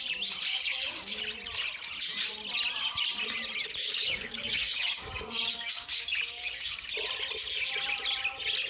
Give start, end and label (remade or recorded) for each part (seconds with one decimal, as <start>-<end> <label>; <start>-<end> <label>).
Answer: 0.0-0.5 recorded; 0.5-1.2 remade; 1.2-3.8 recorded; 3.8-6.9 remade; 6.9-8.7 recorded